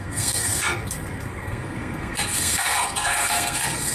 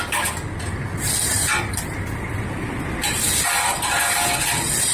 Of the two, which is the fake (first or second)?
first